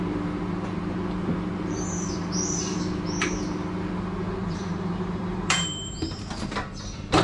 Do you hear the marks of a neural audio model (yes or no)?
yes